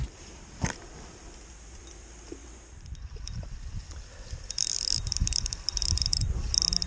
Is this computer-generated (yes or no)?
no